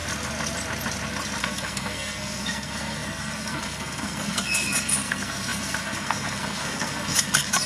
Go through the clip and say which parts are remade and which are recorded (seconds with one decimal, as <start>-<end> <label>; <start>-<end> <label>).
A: 0.0-1.4 recorded; 1.4-7.7 remade